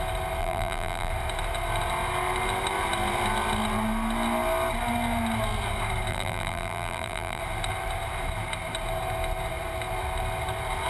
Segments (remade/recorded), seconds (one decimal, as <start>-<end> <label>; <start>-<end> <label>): 0.0-0.4 recorded; 0.4-1.1 remade; 1.1-6.1 recorded; 6.1-7.4 remade; 7.4-10.9 recorded